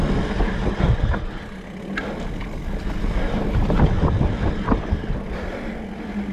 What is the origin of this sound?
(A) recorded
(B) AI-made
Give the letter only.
A